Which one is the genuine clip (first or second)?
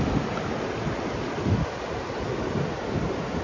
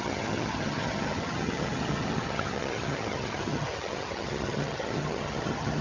first